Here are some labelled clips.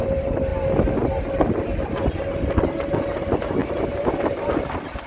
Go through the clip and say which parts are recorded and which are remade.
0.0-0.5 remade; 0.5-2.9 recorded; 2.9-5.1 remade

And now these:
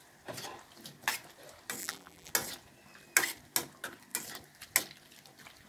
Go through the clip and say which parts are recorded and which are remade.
0.0-1.8 recorded; 1.8-2.3 remade; 2.3-5.7 recorded